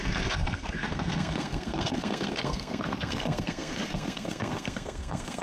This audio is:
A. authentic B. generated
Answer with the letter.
B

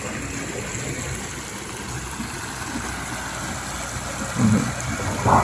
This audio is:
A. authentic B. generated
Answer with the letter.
A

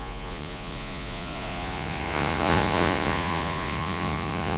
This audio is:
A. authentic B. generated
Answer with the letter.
B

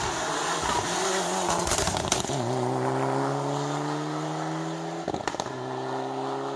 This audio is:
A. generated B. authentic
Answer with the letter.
B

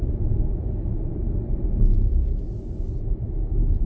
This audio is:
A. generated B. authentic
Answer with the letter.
B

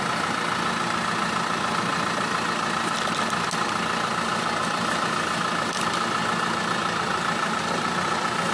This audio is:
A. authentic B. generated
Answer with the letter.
A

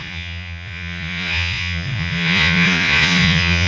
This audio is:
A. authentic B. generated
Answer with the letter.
B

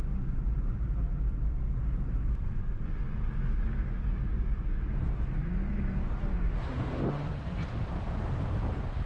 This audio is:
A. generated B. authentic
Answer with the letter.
B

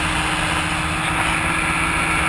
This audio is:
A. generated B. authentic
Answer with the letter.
B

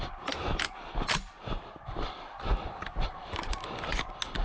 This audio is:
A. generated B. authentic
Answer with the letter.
B